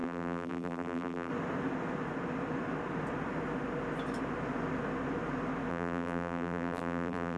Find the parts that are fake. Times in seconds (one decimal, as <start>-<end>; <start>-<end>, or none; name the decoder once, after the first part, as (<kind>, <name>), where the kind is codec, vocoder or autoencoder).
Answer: 0.0-1.3 (vocoder, BigVGAN v2); 5.7-7.4